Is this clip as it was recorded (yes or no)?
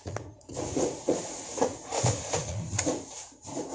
no